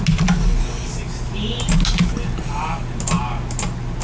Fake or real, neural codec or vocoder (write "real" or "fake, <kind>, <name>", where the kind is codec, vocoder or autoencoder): real